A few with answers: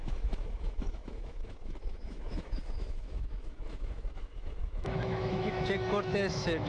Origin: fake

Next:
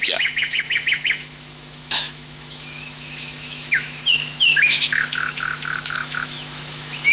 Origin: fake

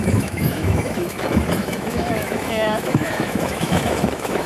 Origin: fake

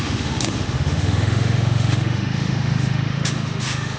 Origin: fake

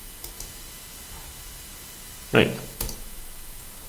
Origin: real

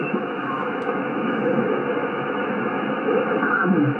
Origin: fake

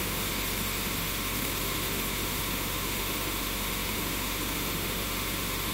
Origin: fake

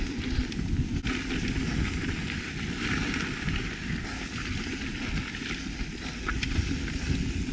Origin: real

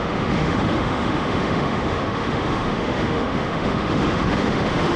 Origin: fake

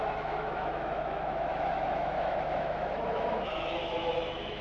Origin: fake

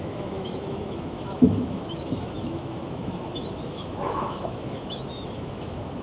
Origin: fake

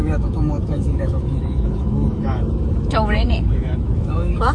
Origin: fake